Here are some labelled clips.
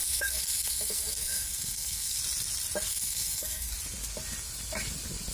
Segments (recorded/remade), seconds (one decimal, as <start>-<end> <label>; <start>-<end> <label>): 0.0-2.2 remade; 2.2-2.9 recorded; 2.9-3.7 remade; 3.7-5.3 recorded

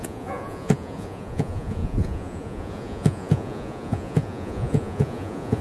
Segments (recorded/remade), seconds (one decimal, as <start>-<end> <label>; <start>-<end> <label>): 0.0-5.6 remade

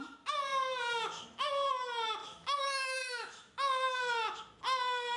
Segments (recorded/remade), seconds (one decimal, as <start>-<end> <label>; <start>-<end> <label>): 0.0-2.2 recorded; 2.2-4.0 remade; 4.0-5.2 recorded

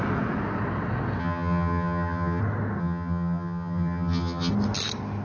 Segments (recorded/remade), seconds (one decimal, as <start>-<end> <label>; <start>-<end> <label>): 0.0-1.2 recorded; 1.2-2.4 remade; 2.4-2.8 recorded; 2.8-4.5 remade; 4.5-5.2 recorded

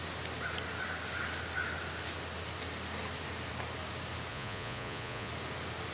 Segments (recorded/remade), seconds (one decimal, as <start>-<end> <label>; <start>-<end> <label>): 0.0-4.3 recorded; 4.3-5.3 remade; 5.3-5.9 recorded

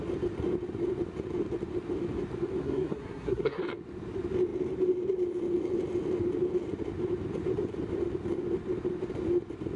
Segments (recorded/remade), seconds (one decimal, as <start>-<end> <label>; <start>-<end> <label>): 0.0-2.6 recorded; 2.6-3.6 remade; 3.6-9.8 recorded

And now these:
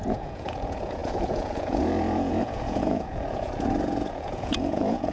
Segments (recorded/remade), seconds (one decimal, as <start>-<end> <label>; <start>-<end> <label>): 0.0-5.1 remade

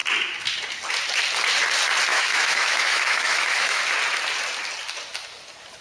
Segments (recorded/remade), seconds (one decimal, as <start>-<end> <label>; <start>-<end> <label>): 0.0-2.1 recorded; 2.1-3.8 remade; 3.8-5.8 recorded